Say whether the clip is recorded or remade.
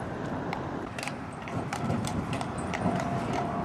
remade